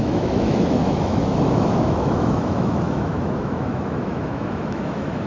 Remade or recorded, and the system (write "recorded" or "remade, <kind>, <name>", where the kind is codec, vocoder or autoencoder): remade, autoencoder, DAC-VAE